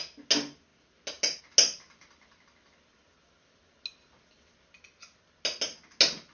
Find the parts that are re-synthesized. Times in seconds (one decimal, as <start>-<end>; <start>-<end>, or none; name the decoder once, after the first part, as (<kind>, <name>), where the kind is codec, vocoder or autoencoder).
none